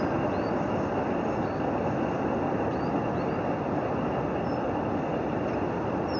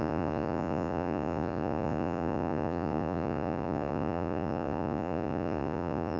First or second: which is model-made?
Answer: second